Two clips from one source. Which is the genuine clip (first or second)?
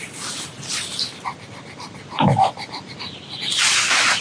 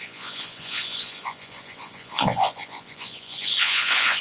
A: first